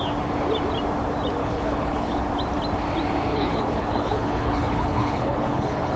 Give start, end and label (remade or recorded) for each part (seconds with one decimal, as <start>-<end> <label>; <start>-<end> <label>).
0.0-1.4 recorded; 1.4-2.2 remade; 2.2-3.3 recorded; 3.3-6.0 remade